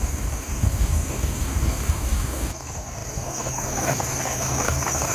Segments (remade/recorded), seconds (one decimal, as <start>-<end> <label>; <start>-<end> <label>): 0.0-5.1 remade